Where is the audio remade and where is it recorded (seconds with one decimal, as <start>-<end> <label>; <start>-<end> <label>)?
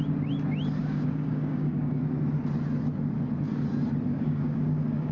0.0-0.8 recorded; 0.8-2.0 remade; 2.0-4.1 recorded; 4.1-5.1 remade